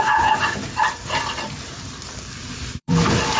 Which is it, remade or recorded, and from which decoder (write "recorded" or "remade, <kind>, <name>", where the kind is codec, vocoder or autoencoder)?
remade, vocoder, BigVGAN v2